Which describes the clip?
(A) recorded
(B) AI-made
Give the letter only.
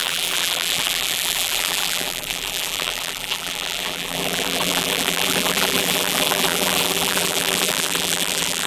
B